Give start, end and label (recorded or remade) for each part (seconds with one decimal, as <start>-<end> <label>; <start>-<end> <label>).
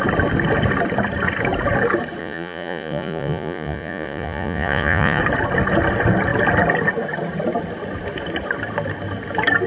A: 0.0-2.2 recorded; 2.2-5.2 remade; 5.2-9.7 recorded